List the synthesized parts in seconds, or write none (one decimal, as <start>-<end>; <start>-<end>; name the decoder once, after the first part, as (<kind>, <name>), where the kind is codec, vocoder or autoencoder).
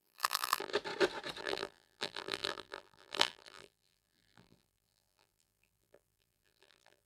0.0-0.7 (vocoder, BigVGAN v2); 1.4-7.1